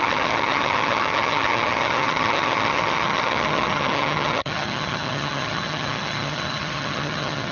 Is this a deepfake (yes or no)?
yes